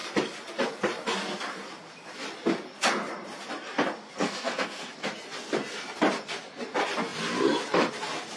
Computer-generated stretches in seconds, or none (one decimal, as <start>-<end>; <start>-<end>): 4.2-4.9